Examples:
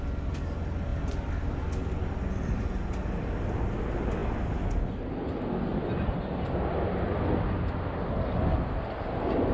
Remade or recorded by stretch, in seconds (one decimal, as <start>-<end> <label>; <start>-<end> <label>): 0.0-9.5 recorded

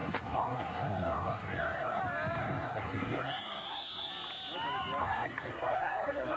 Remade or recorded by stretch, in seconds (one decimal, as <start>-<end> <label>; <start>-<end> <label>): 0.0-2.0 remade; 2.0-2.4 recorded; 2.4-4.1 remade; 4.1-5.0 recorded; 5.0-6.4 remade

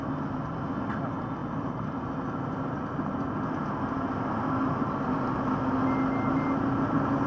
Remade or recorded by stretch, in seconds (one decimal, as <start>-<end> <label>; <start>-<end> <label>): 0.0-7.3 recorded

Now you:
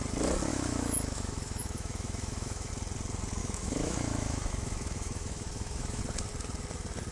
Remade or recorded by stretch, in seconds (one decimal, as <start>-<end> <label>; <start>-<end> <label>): 0.0-0.5 recorded; 0.5-2.7 remade; 2.7-3.4 recorded; 3.4-6.0 remade; 6.0-7.1 recorded